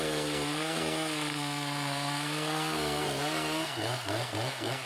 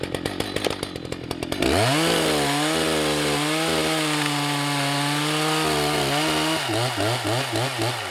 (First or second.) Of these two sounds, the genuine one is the second